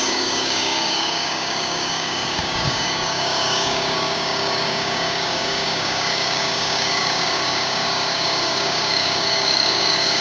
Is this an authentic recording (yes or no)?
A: no